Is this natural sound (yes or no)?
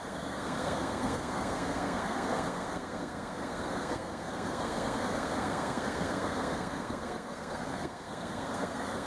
no